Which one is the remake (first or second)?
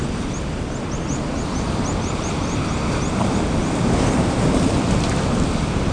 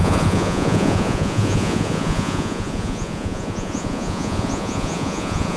second